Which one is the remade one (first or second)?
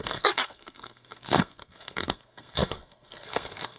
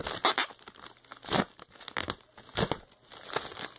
first